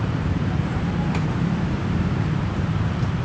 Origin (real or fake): fake